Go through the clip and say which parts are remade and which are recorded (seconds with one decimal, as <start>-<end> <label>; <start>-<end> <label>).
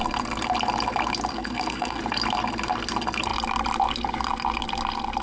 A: 0.0-1.3 recorded; 1.3-2.0 remade; 2.0-5.2 recorded